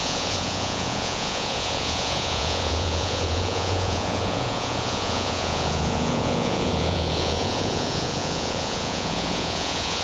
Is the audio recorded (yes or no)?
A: no